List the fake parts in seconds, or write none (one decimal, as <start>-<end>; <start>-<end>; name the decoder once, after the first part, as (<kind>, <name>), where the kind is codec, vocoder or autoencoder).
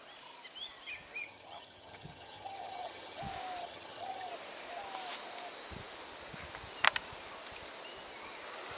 1.2-3.2 (vocoder, HiFi-GAN); 3.6-4.3